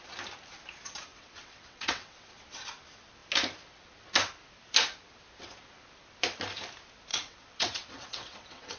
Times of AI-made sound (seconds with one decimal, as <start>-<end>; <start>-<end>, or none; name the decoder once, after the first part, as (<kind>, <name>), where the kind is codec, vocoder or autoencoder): 1.1-2.3 (vocoder, WaveNeXt); 7.1-8.8